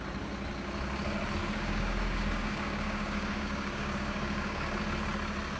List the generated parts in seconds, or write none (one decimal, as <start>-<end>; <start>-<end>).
1.4-4.8